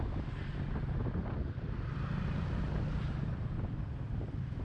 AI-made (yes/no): no